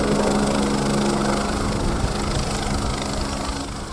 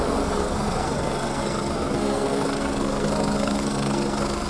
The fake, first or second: second